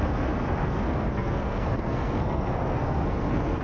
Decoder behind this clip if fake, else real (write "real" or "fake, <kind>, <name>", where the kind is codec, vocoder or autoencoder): fake, codec, SNAC